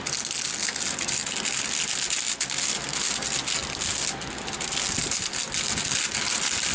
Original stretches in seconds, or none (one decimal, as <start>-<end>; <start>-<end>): 0.0-6.7